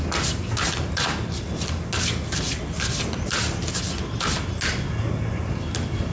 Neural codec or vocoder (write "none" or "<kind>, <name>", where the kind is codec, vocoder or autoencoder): none